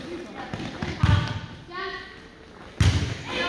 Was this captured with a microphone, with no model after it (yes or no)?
yes